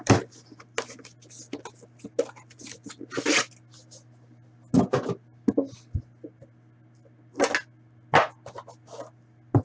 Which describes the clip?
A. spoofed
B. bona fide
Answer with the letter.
B